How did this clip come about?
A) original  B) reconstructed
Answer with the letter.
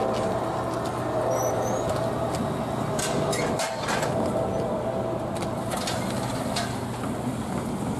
A